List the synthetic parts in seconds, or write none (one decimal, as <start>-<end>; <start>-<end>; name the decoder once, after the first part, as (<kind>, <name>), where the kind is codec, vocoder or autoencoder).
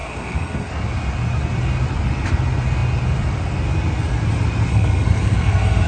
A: 0.0-0.7 (codec, SNAC); 4.7-5.9